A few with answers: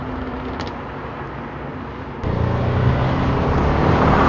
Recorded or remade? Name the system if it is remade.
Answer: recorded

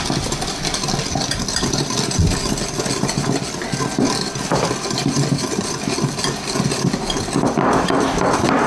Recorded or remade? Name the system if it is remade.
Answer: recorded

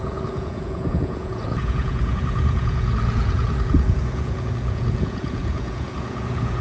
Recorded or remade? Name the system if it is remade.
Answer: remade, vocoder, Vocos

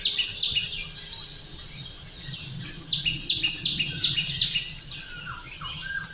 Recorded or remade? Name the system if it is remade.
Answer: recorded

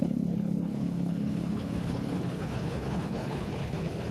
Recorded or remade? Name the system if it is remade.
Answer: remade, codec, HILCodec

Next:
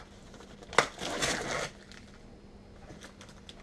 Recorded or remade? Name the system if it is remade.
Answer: recorded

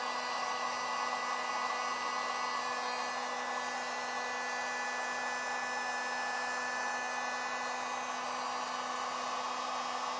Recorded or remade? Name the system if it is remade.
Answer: recorded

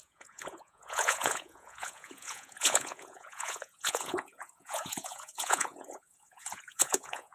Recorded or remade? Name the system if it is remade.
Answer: remade, vocoder, Vocos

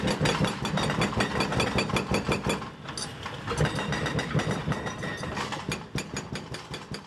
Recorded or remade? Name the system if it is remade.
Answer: recorded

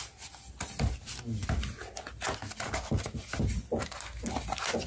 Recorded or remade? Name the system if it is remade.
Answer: recorded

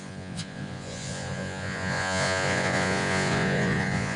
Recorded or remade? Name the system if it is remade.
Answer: remade, vocoder, Vocos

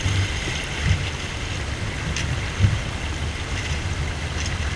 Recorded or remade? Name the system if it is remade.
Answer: recorded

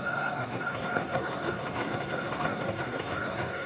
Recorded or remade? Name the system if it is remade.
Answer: remade, codec, SNAC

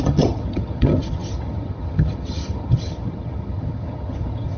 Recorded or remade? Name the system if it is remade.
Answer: remade, vocoder, HiFi-GAN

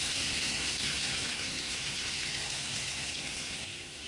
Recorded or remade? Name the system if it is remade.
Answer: remade, codec, SNAC